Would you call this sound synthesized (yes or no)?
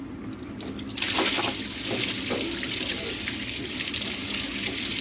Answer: no